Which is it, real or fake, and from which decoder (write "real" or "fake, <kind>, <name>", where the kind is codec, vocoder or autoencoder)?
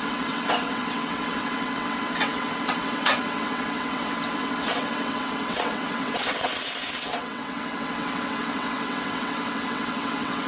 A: fake, vocoder, WaveNeXt